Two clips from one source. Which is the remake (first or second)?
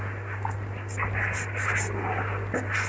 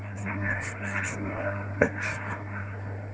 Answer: second